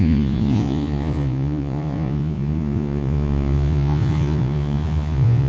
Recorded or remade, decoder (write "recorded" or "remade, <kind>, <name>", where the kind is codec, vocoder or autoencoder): remade, vocoder, Vocos